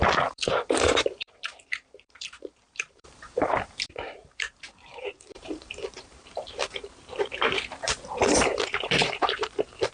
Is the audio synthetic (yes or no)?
yes